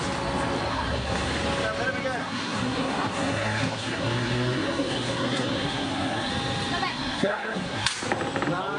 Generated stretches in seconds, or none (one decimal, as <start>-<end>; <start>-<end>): 0.7-1.3; 2.2-6.3; 6.9-7.9